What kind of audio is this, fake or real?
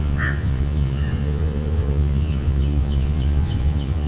fake